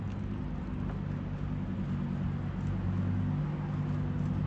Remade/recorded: recorded